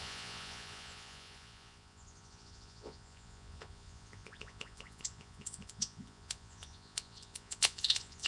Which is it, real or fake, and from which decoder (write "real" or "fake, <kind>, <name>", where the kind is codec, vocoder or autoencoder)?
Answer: fake, vocoder, Vocos